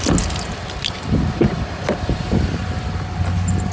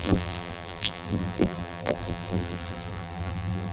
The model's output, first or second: second